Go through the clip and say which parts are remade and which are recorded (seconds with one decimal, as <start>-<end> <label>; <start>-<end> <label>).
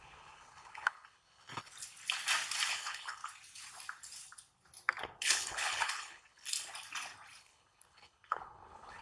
0.0-1.7 remade; 1.7-2.7 recorded; 2.7-3.2 remade; 3.2-5.2 recorded; 5.2-6.5 remade; 6.5-7.4 recorded; 7.4-9.0 remade